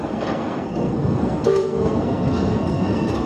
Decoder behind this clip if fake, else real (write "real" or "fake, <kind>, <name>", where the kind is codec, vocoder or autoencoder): fake, codec, SNAC